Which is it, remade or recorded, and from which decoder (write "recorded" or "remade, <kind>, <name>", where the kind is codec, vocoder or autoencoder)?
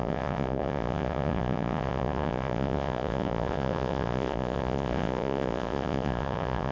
remade, vocoder, Vocos